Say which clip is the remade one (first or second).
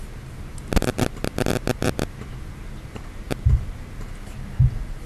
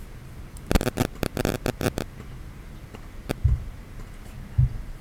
second